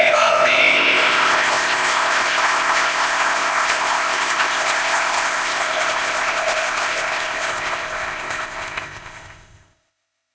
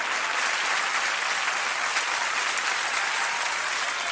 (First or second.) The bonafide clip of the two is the second